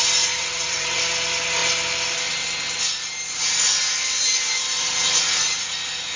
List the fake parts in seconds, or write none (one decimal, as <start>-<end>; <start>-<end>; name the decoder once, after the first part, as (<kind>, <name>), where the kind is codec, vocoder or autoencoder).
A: 0.4-1.0 (vocoder, WaveNeXt)